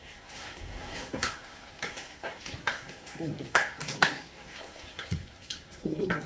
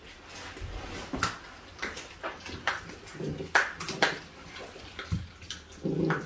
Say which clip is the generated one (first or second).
first